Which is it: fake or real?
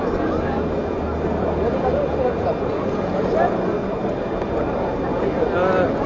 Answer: real